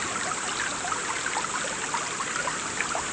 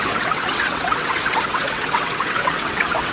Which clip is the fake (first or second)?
second